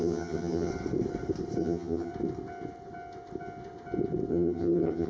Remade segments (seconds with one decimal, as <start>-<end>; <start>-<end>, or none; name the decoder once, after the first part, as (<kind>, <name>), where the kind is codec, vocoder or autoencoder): 0.0-0.7 (vocoder, HiFi-GAN); 1.6-2.1; 4.3-5.1